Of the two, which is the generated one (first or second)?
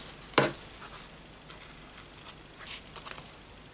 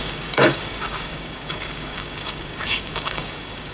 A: second